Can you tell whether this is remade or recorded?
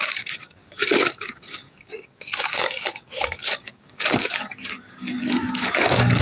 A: remade